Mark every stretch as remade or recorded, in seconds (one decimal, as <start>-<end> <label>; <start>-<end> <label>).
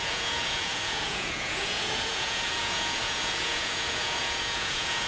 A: 0.0-5.1 remade